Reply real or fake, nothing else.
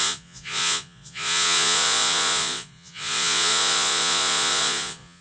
fake